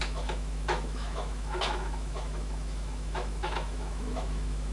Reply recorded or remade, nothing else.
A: remade